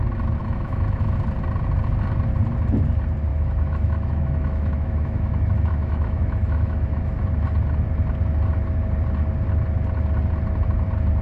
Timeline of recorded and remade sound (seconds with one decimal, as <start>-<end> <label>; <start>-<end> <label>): 0.0-0.4 recorded; 0.4-1.2 remade; 1.2-3.3 recorded; 3.3-7.2 remade; 7.2-11.2 recorded